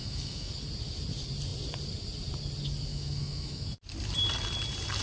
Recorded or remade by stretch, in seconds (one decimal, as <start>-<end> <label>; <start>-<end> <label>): 0.0-0.5 remade; 0.5-2.9 recorded; 2.9-3.8 remade; 3.8-5.0 recorded